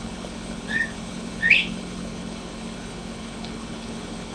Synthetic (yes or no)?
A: yes